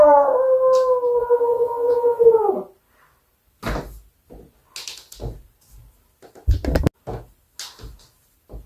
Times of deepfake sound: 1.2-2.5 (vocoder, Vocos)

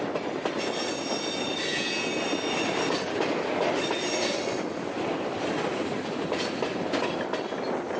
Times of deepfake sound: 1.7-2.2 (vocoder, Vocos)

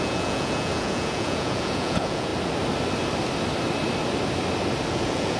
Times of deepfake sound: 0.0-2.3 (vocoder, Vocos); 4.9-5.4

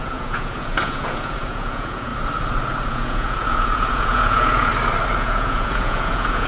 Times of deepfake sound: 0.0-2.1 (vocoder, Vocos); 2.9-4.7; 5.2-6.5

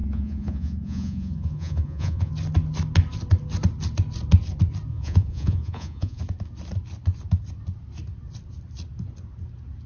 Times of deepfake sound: 0.0-2.3 (vocoder, Vocos); 4.9-6.2

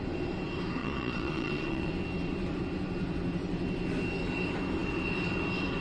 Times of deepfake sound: 0.8-1.9 (vocoder, Vocos)